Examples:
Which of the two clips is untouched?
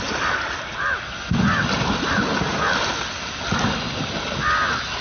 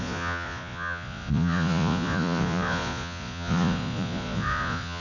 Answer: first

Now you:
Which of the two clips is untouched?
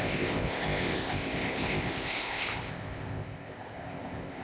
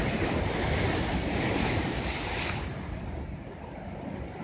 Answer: second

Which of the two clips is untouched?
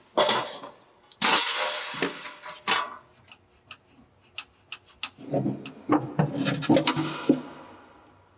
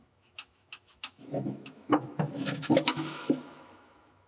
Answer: first